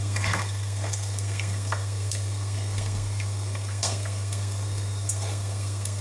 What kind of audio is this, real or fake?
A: fake